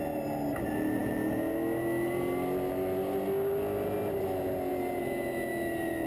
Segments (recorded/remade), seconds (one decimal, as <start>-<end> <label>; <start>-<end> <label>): 0.0-6.1 recorded